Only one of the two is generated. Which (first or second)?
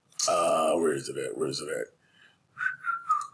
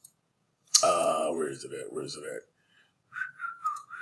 second